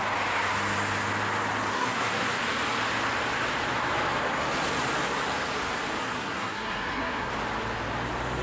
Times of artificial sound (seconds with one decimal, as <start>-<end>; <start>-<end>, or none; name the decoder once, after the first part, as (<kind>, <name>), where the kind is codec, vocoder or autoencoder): 1.7-2.4 (codec, SNAC); 6.0-7.3